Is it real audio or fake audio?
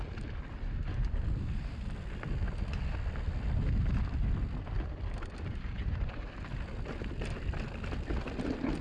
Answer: real